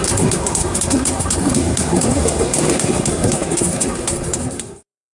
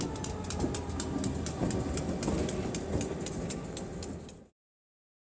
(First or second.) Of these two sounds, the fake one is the first